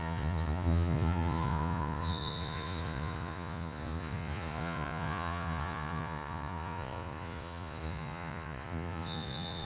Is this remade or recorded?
remade